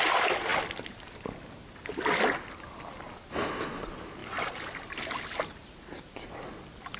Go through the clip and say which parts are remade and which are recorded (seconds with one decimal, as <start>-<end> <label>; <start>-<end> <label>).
0.0-7.0 recorded